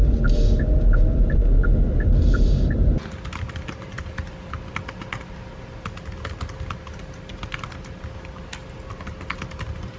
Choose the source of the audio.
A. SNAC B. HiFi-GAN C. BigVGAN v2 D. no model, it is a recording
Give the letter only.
D